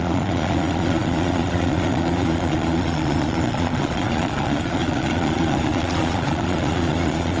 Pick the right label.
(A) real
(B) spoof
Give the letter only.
B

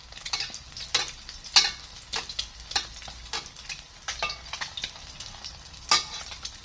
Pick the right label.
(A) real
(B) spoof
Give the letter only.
A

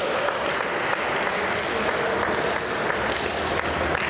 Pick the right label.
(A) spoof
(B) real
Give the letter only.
B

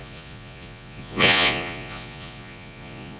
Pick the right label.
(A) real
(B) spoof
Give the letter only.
B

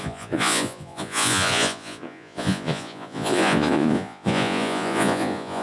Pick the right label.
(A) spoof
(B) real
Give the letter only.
A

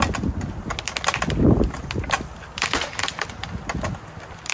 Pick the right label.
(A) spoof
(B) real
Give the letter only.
B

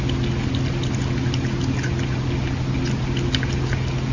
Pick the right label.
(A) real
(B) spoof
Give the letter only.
A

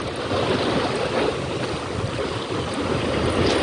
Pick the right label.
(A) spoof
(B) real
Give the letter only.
B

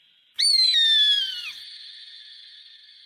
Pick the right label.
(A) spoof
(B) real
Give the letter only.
B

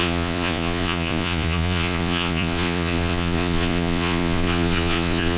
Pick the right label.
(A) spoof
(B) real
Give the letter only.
A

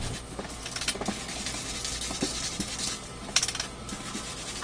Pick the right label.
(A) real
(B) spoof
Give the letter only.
A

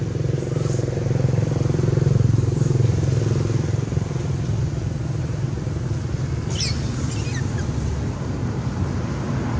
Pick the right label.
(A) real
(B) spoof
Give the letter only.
A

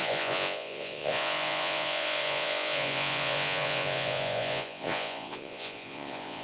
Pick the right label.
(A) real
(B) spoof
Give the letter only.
B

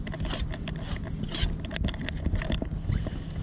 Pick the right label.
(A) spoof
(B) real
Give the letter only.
B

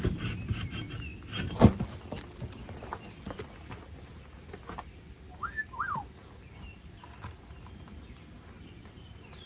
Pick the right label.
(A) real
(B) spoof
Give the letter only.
A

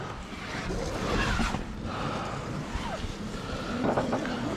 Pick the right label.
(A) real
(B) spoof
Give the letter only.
A